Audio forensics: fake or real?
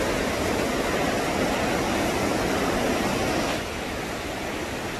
real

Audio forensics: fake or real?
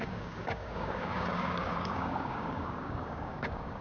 fake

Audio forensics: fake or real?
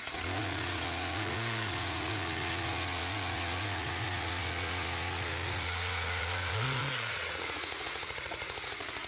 fake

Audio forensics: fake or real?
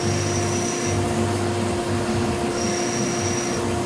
real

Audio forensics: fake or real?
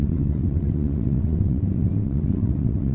fake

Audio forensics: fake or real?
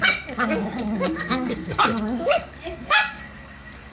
fake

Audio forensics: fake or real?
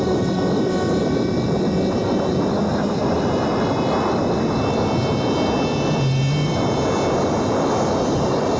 real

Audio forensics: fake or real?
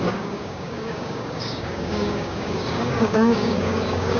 fake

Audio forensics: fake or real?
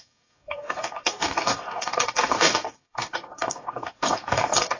fake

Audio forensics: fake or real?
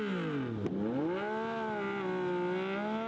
real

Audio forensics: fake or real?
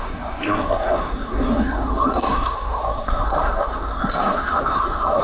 fake